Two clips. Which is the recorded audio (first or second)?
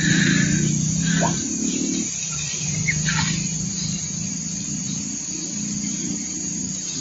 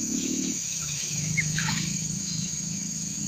first